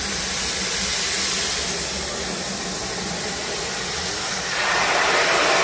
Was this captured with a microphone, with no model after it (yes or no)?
yes